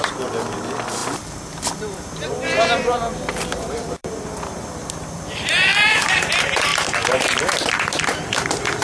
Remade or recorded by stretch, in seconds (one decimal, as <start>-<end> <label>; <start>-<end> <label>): 0.0-6.7 remade; 6.7-7.9 recorded; 7.9-8.8 remade